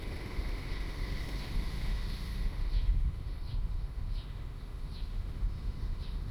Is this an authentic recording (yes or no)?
no